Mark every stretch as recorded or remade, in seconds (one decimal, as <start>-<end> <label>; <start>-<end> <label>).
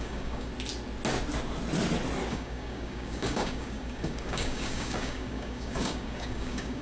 0.0-0.5 remade; 0.5-2.3 recorded; 2.3-6.8 remade